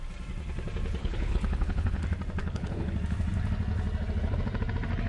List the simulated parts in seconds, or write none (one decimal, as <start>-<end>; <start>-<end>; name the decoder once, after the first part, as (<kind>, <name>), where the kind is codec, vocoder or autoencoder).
1.0-2.0 (codec, HILCodec); 2.4-2.9